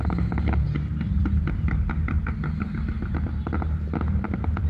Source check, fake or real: real